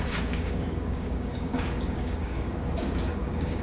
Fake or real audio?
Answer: fake